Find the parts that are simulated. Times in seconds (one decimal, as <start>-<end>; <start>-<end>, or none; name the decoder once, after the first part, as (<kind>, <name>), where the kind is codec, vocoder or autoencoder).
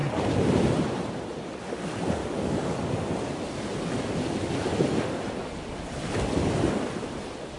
2.2-2.9 (codec, DAC)